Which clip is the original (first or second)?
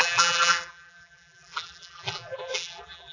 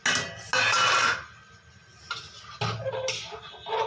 second